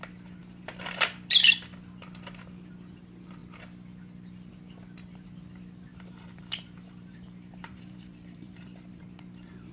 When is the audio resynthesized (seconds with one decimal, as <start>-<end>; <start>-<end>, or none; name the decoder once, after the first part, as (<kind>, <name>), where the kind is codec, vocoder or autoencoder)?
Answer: 5.9-9.0 (vocoder, BigVGAN v2)